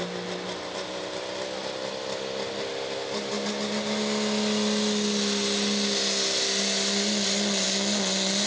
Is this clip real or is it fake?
real